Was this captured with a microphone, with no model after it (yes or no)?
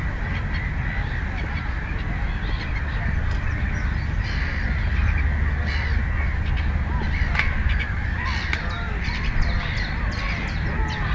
yes